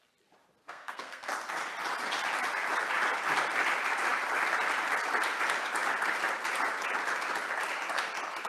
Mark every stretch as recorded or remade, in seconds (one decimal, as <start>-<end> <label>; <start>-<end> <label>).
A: 0.0-0.6 recorded; 0.6-1.3 remade; 1.3-8.5 recorded